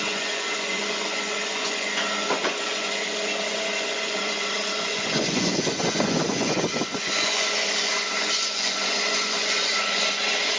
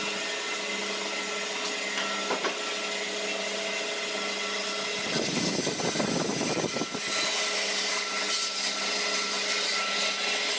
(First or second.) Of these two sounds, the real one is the second